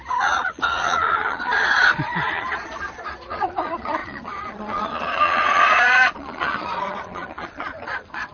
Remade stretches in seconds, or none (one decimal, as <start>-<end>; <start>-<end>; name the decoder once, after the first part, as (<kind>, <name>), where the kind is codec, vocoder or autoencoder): 0.0-8.3 (vocoder, Vocos)